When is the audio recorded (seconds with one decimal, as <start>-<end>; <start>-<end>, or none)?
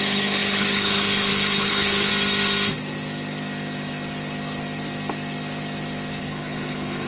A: 2.1-6.2